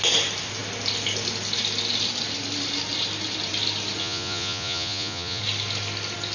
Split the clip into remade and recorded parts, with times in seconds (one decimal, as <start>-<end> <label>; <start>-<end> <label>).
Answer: 0.0-4.0 recorded; 4.0-5.4 remade; 5.4-6.3 recorded